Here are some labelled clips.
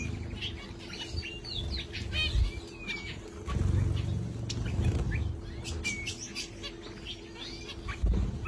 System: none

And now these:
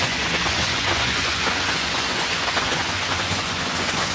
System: vocoder, Vocos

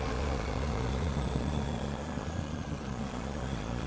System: vocoder, Vocos